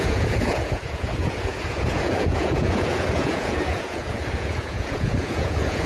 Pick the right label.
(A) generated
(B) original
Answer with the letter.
A